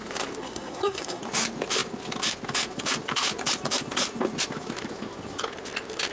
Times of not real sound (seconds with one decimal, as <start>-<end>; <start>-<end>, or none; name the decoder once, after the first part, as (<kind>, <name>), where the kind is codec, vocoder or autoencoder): 0.4-1.2 (codec, SNAC)